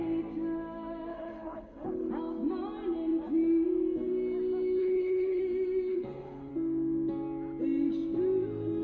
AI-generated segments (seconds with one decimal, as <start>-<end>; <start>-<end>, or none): 1.1-2.1; 4.8-5.4; 5.9-6.5